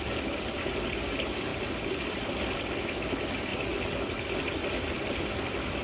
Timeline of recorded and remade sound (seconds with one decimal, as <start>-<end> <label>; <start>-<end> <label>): 0.0-1.5 recorded; 1.5-2.2 remade; 2.2-4.6 recorded; 4.6-5.8 remade